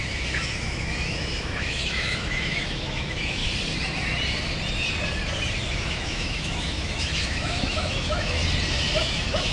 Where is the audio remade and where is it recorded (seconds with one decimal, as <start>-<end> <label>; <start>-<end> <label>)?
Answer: 0.0-3.4 remade; 3.4-5.7 recorded; 5.7-8.4 remade; 8.4-9.0 recorded; 9.0-9.5 remade